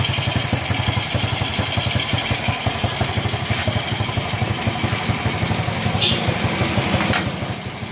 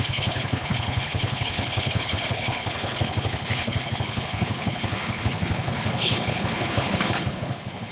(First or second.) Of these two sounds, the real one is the first